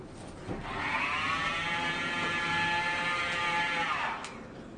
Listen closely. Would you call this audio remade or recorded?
recorded